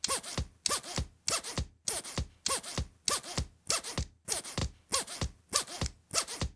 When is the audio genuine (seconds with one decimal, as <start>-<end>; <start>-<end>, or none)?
0.0-6.6